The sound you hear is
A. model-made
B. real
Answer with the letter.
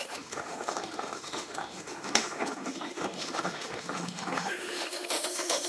A